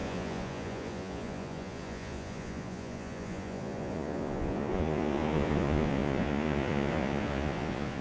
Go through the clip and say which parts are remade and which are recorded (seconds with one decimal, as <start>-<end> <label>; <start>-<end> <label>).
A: 0.0-8.0 remade

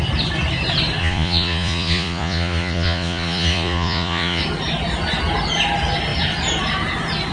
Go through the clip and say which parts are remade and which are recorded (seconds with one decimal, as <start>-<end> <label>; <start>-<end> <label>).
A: 0.0-1.0 recorded; 1.0-4.4 remade; 4.4-7.3 recorded

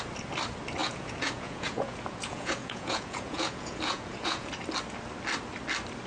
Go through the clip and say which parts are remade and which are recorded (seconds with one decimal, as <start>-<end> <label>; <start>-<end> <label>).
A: 0.0-0.8 recorded; 0.8-4.5 remade; 4.5-6.1 recorded

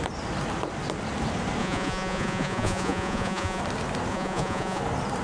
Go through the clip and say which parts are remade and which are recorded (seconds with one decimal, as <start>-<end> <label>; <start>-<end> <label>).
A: 0.0-1.6 recorded; 1.6-3.6 remade; 3.6-4.1 recorded; 4.1-4.8 remade; 4.8-5.2 recorded

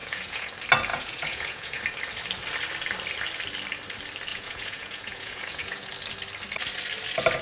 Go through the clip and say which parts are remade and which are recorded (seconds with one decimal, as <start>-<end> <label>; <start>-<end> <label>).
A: 0.0-0.5 remade; 0.5-0.9 recorded; 0.9-1.8 remade; 1.8-4.3 recorded; 4.3-5.9 remade; 5.9-7.4 recorded

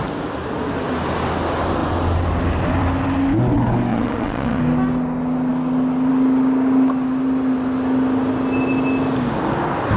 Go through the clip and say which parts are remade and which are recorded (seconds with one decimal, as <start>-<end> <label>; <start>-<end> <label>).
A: 0.0-3.9 recorded; 3.9-4.6 remade; 4.6-10.0 recorded

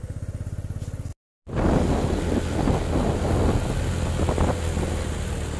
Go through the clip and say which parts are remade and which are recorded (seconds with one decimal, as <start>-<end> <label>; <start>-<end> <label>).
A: 0.0-5.6 recorded